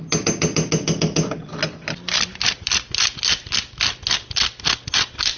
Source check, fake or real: real